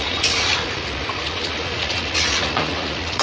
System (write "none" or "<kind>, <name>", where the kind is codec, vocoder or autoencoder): vocoder, Vocos